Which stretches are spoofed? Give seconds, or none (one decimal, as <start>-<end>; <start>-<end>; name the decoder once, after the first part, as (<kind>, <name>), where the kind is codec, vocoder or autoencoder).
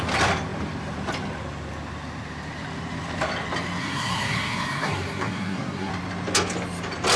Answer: 3.8-5.9 (codec, SNAC)